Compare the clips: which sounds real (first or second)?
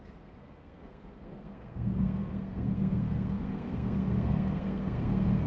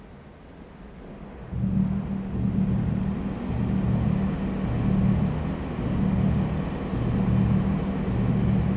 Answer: second